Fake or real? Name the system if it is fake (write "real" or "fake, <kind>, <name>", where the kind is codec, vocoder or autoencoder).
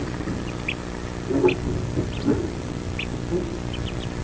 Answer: real